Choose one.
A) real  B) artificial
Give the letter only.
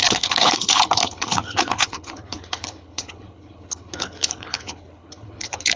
B